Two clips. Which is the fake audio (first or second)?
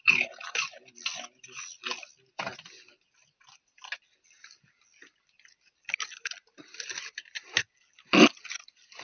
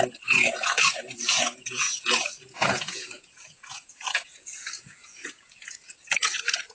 second